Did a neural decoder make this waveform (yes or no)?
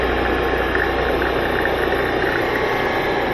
no